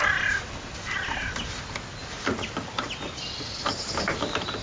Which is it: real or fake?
real